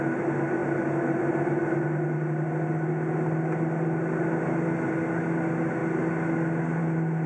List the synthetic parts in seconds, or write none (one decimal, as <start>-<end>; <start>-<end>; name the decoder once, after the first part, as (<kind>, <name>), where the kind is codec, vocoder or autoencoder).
none